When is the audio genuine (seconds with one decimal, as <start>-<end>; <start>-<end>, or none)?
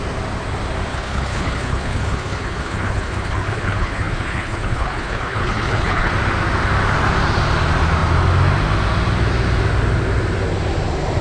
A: 0.0-0.9; 6.1-11.2